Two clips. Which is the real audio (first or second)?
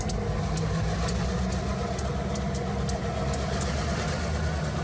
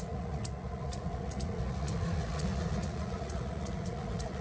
first